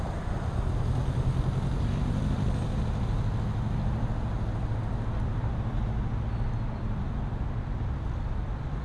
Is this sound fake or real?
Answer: real